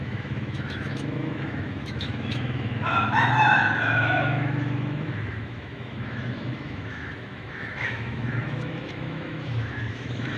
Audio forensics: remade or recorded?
remade